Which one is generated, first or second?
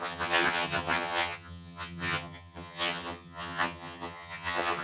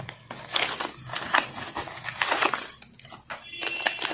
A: first